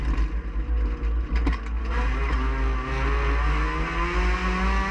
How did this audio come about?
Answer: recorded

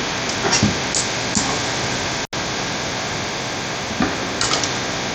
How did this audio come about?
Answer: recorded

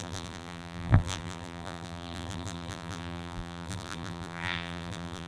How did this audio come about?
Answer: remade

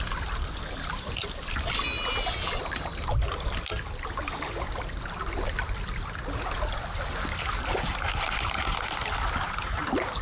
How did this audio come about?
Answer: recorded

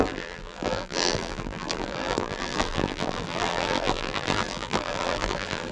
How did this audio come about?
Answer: remade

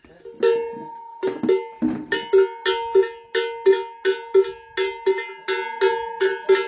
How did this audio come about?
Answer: recorded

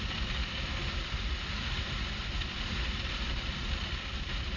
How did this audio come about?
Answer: remade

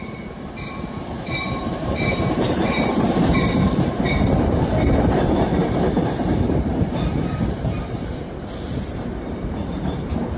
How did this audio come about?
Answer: remade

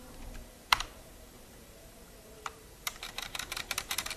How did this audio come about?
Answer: remade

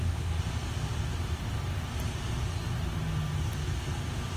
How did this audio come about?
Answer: recorded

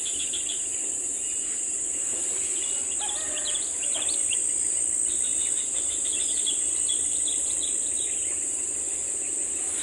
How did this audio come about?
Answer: recorded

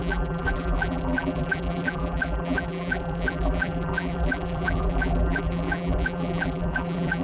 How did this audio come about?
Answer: remade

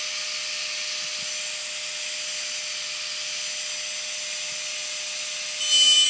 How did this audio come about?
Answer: recorded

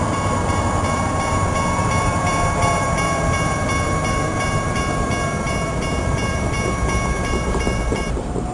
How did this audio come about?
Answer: remade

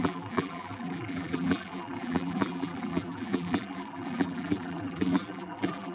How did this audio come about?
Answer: remade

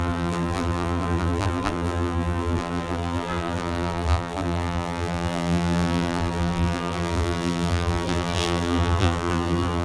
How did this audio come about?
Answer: remade